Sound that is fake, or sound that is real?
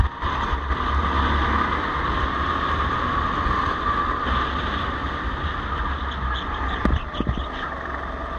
real